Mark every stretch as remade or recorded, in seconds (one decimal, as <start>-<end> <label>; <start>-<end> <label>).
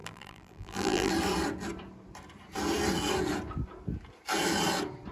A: 0.0-1.1 remade; 1.1-5.1 recorded